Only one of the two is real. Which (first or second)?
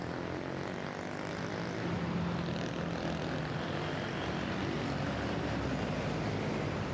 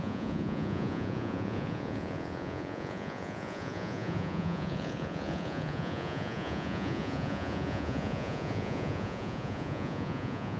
first